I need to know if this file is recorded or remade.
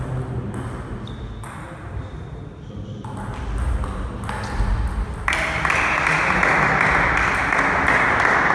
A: recorded